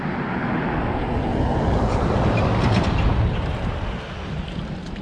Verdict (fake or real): real